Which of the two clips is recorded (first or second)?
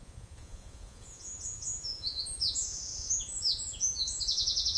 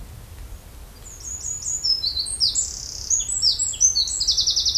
second